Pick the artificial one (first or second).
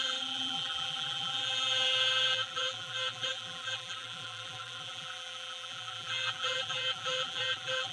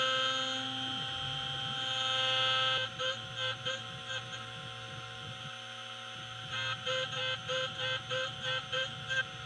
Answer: first